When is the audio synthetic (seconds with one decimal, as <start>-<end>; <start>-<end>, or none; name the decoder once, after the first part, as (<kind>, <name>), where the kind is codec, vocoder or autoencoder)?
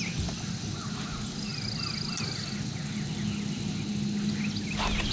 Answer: none